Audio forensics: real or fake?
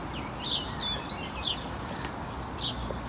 real